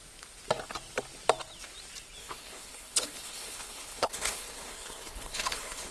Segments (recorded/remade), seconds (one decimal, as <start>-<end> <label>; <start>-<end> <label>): 0.0-2.2 recorded; 2.2-5.9 remade

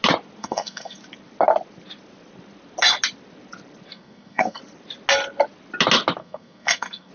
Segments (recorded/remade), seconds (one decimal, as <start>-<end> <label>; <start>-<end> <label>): 0.0-0.4 recorded; 0.4-1.0 remade; 1.0-3.9 recorded; 3.9-4.6 remade; 4.6-6.2 recorded; 6.2-7.1 remade

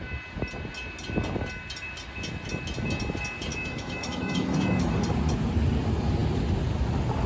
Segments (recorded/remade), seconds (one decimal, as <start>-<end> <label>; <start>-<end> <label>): 0.0-3.5 recorded; 3.5-4.9 remade; 4.9-7.3 recorded

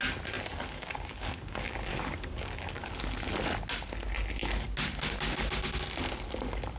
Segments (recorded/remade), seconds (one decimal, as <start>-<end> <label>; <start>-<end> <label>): 0.0-0.5 recorded; 0.5-2.9 remade; 2.9-6.8 recorded

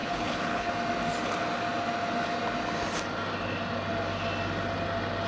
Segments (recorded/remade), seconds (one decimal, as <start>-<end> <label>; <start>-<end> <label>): 0.0-0.7 remade; 0.7-5.3 recorded

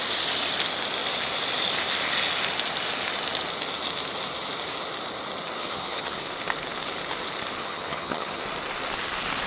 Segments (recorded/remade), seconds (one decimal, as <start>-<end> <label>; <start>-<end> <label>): 0.0-5.6 recorded; 5.6-6.2 remade; 6.2-7.6 recorded; 7.6-8.4 remade; 8.4-9.5 recorded